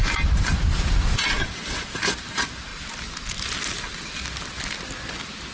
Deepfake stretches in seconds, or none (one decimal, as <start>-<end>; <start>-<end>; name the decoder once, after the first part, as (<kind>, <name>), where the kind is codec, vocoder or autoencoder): 1.4-1.9 (vocoder, WaveNeXt)